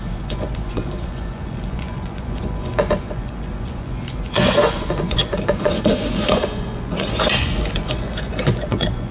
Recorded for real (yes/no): no